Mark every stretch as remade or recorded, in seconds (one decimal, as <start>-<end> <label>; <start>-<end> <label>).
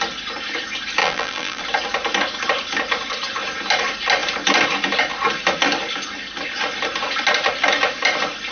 0.0-1.0 recorded; 1.0-1.6 remade; 1.6-8.5 recorded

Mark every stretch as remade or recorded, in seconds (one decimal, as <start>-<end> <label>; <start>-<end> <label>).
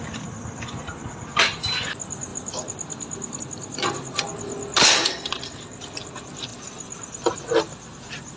0.0-4.3 remade; 4.3-5.0 recorded; 5.0-8.4 remade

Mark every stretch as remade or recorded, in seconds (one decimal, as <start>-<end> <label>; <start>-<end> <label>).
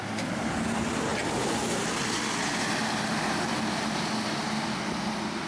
0.0-5.5 recorded